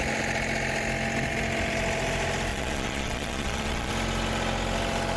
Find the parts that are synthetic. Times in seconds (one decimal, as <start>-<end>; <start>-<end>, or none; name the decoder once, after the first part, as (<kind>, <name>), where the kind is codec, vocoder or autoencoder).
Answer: 2.5-3.9 (vocoder, Vocos)